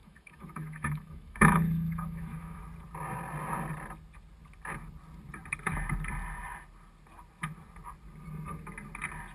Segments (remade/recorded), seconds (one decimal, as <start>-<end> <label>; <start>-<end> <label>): 0.0-2.6 remade; 2.6-9.3 recorded